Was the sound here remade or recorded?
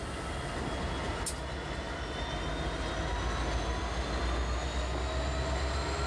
recorded